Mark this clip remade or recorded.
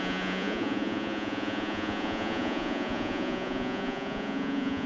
remade